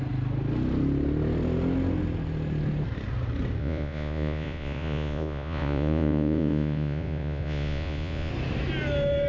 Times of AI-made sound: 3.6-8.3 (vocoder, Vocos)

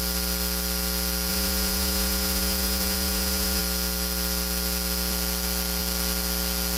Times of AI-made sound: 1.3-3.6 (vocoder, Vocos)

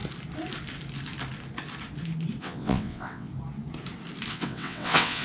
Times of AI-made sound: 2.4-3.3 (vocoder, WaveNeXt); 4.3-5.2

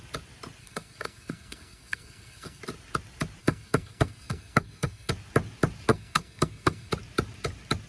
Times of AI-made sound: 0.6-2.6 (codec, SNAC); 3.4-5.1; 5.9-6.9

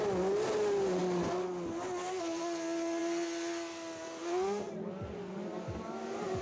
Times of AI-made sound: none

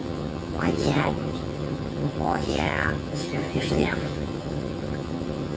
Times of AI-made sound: 0.0-5.6 (vocoder, HiFi-GAN)

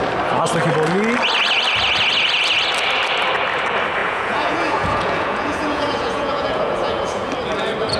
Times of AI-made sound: 4.0-7.3 (vocoder, Vocos)

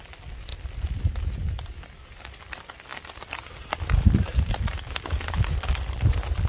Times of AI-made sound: none